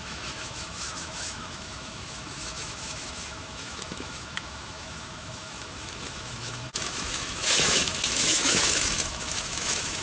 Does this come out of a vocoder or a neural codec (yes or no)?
yes